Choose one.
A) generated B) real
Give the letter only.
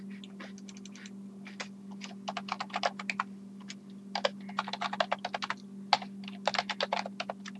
B